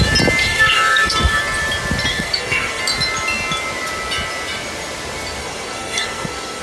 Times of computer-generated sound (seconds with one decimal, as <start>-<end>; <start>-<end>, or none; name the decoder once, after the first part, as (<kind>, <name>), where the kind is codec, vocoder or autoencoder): 0.4-1.4 (codec, SNAC); 2.1-2.8; 5.4-6.6